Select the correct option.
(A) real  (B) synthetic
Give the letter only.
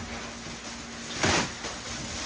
A